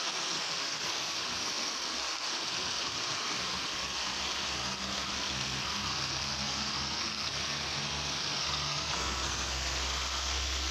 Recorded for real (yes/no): no